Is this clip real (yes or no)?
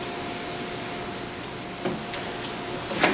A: yes